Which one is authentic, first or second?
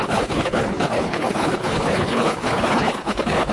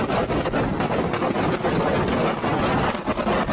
second